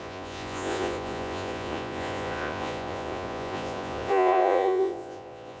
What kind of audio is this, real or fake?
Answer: fake